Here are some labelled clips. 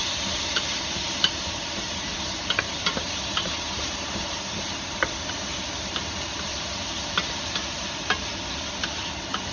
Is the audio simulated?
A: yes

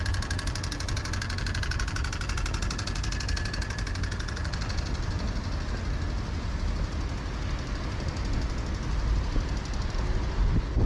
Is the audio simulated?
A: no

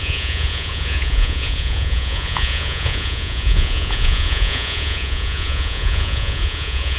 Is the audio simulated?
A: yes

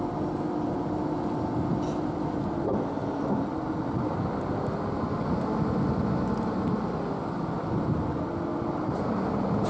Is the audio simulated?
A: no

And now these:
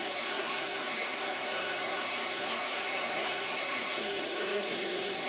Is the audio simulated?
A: yes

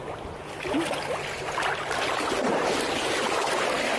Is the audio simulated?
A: no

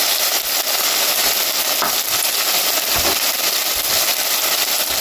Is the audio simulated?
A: no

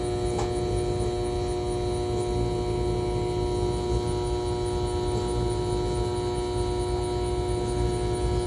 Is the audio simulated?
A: no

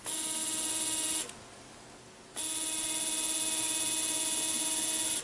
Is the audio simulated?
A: no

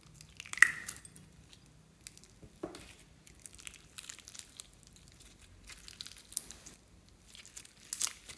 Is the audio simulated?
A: no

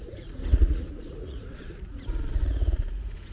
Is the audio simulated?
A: yes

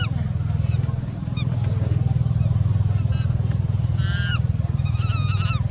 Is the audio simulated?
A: no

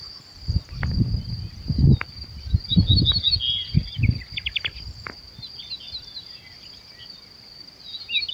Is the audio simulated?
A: no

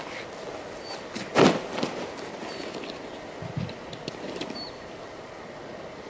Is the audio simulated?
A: no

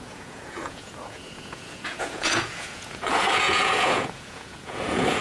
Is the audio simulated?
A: yes